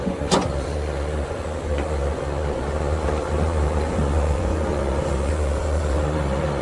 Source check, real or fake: fake